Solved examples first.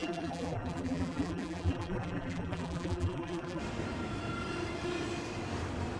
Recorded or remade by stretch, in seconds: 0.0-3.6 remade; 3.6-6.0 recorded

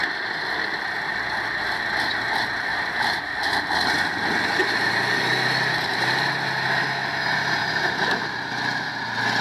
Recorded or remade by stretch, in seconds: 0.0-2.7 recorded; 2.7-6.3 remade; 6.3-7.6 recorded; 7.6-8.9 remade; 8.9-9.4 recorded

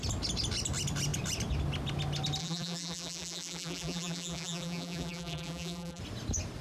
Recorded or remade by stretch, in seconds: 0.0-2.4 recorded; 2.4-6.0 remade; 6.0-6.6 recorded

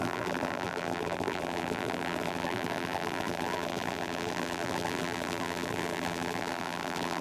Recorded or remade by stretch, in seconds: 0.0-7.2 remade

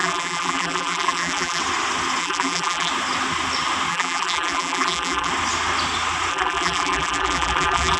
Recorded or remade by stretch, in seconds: 0.0-1.6 remade; 1.6-2.2 recorded; 2.2-2.9 remade; 2.9-3.9 recorded; 3.9-5.3 remade; 5.3-6.3 recorded; 6.3-8.0 remade

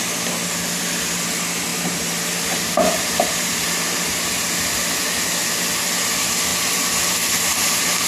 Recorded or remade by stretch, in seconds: 0.0-1.7 recorded; 1.7-4.4 remade; 4.4-8.1 recorded